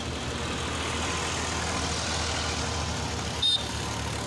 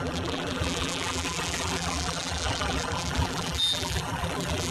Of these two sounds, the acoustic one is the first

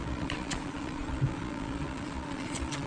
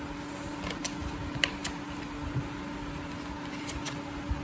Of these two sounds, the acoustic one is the second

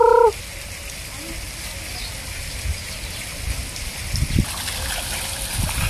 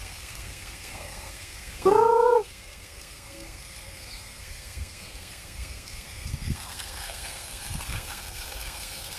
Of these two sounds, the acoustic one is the first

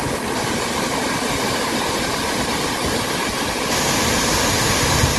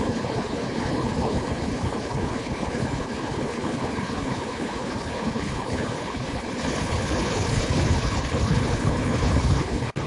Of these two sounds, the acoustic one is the first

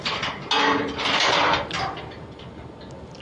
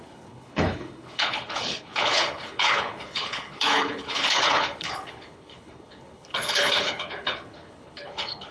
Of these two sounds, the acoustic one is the first